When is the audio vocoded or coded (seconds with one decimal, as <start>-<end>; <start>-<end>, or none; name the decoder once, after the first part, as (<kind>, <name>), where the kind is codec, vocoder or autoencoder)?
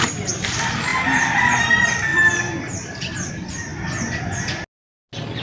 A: 0.0-3.7 (vocoder, BigVGAN v2)